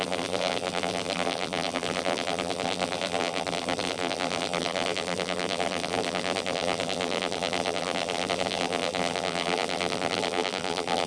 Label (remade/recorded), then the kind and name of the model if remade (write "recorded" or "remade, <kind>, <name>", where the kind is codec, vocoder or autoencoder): remade, vocoder, BigVGAN v2